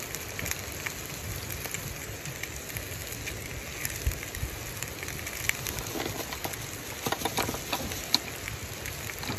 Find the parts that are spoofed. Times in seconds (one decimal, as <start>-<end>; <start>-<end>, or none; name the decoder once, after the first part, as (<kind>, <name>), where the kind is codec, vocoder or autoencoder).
none